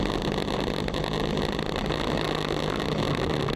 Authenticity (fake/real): real